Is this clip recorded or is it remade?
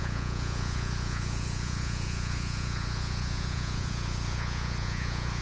remade